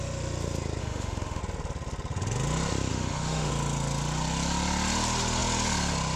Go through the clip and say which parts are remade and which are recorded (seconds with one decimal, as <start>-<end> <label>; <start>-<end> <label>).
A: 0.0-0.8 recorded; 0.8-1.4 remade; 1.4-2.9 recorded; 2.9-3.5 remade; 3.5-6.2 recorded

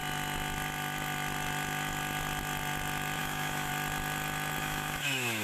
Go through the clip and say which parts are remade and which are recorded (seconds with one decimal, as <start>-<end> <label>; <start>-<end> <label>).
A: 0.0-3.2 recorded; 3.2-3.7 remade; 3.7-4.6 recorded; 4.6-5.4 remade

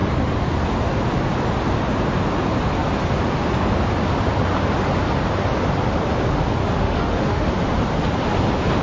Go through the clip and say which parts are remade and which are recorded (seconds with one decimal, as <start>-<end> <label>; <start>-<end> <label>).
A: 0.0-6.6 recorded; 6.6-7.5 remade; 7.5-8.8 recorded

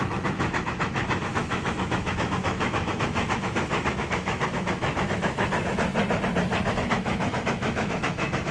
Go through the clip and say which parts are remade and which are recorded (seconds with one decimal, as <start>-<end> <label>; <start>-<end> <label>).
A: 0.0-5.9 remade; 5.9-6.7 recorded; 6.7-8.5 remade

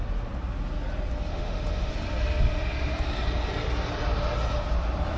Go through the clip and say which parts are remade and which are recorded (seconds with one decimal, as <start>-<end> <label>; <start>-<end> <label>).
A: 0.0-1.3 recorded; 1.3-1.9 remade; 1.9-5.2 recorded

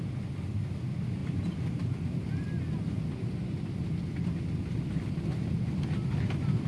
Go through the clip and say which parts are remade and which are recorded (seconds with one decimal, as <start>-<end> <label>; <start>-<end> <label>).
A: 0.0-6.7 recorded

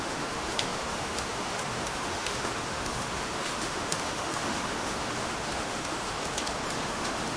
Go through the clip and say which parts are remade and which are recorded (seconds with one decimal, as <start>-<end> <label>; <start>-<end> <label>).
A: 0.0-7.4 remade